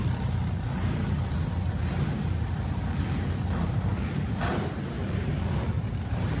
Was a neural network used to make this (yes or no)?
yes